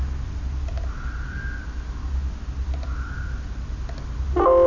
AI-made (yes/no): no